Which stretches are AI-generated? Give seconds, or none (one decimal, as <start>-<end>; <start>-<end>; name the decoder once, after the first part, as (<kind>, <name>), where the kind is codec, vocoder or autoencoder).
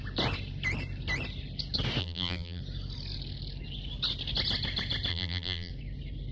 2.0-2.6 (vocoder, BigVGAN v2); 5.1-5.7